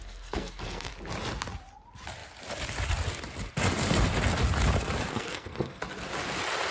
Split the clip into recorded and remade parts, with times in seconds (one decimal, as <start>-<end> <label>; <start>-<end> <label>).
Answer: 0.0-0.9 remade; 0.9-5.1 recorded; 5.1-5.8 remade; 5.8-6.7 recorded